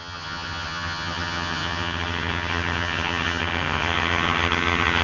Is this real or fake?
fake